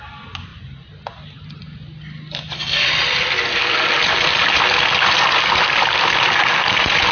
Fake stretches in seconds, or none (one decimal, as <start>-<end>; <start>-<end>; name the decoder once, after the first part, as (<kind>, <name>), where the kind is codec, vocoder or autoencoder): none